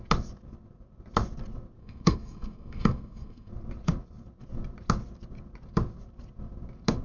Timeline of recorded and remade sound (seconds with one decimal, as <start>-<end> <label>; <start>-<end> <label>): 0.0-1.8 recorded; 1.8-3.5 remade; 3.5-7.0 recorded